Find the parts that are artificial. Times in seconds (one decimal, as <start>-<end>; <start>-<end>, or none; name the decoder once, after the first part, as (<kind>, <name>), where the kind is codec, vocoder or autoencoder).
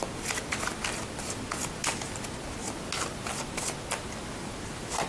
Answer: none